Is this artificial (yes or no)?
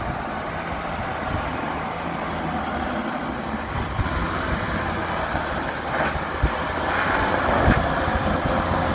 no